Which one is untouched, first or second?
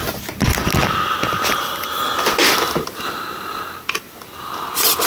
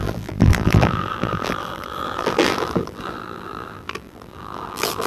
first